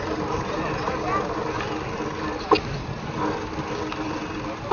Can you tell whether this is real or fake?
real